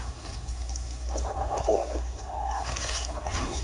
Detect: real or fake fake